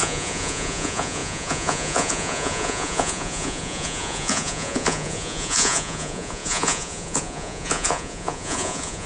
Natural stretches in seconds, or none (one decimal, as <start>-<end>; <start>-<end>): none